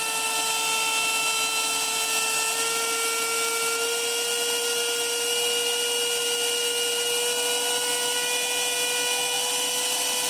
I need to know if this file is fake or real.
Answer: real